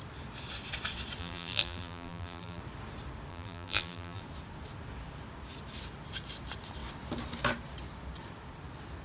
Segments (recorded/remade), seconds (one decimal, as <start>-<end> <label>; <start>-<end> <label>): 0.0-1.2 recorded; 1.2-2.6 remade; 2.6-3.3 recorded; 3.3-4.2 remade; 4.2-9.0 recorded